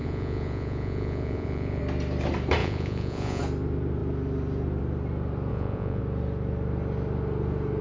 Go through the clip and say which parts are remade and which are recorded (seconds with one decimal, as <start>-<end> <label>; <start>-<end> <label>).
0.0-1.8 remade; 1.8-2.6 recorded; 2.6-3.4 remade; 3.4-5.5 recorded; 5.5-6.0 remade; 6.0-7.8 recorded

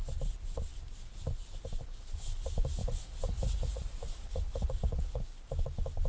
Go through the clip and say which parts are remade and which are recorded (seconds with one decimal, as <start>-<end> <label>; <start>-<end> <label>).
0.0-2.8 recorded; 2.8-5.2 remade; 5.2-6.1 recorded

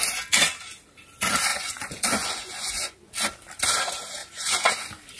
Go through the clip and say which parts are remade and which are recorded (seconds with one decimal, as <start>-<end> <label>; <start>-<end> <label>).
0.0-1.5 recorded; 1.5-3.0 remade; 3.0-4.2 recorded; 4.2-4.8 remade; 4.8-5.2 recorded

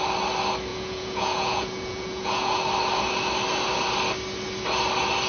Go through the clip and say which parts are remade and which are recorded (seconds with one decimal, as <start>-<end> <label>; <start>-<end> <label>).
0.0-0.7 recorded; 0.7-2.6 remade; 2.6-5.3 recorded

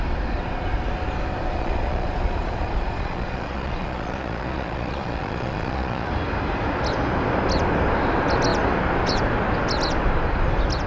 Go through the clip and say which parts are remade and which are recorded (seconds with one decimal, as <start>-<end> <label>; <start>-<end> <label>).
0.0-1.5 recorded; 1.5-6.1 remade; 6.1-10.9 recorded

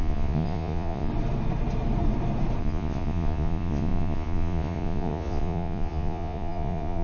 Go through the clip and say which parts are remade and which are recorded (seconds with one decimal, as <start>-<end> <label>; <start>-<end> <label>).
0.0-1.1 remade; 1.1-2.6 recorded; 2.6-7.0 remade

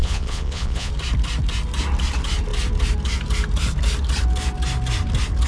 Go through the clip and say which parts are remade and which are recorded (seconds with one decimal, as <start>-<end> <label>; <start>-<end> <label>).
0.0-0.9 remade; 0.9-5.5 recorded